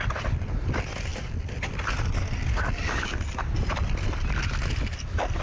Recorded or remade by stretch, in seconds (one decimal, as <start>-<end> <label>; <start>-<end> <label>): 0.0-1.1 remade; 1.1-4.3 recorded; 4.3-5.4 remade